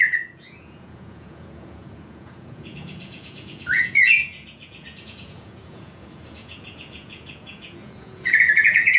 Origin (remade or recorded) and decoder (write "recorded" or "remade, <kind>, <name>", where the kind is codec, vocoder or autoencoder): remade, vocoder, Vocos